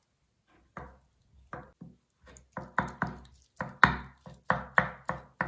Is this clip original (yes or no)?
yes